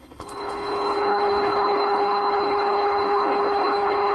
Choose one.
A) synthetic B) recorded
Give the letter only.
A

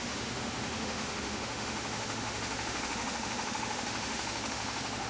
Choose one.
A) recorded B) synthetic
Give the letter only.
B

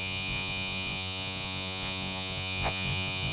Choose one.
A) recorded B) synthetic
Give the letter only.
B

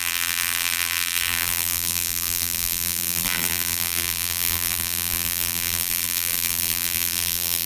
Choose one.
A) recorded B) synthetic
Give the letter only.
B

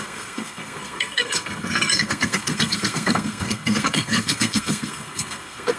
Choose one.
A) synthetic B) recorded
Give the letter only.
A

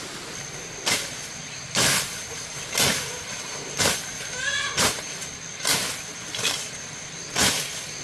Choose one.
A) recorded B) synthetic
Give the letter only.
A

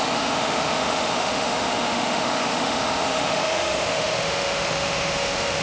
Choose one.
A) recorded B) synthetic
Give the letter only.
B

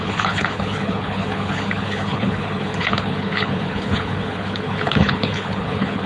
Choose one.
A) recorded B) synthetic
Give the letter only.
B